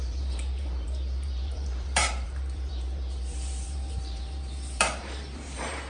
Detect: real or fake fake